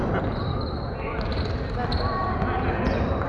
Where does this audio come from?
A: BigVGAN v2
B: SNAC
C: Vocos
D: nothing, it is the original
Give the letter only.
D